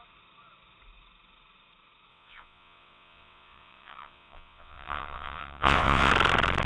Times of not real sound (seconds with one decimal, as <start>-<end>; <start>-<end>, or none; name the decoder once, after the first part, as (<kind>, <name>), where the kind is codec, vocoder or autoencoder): 2.1-6.1 (vocoder, WaveNeXt)